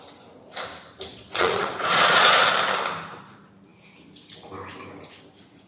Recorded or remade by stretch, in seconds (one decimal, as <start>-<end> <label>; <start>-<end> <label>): 0.0-1.1 recorded; 1.1-2.4 remade; 2.4-5.7 recorded